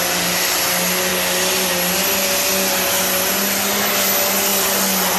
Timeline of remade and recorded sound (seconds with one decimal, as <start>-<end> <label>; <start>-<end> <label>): 0.0-5.2 recorded